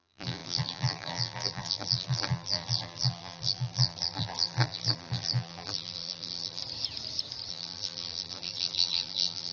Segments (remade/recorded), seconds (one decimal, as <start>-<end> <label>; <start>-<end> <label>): 0.0-6.6 remade; 6.6-7.5 recorded; 7.5-9.5 remade